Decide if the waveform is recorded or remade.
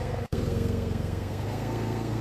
remade